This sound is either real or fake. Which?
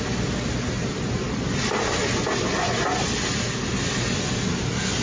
real